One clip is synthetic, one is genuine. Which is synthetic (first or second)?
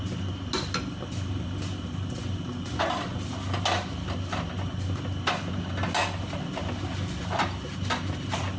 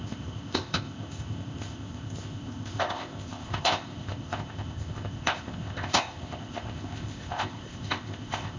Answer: second